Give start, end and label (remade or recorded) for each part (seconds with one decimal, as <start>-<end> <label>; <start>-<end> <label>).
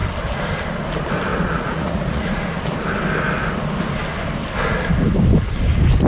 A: 0.0-1.3 recorded; 1.3-2.4 remade; 2.4-6.1 recorded